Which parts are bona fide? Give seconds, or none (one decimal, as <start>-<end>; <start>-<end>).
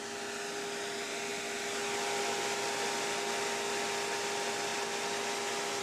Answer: 0.0-5.8